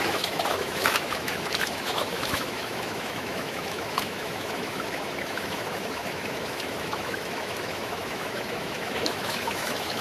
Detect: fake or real fake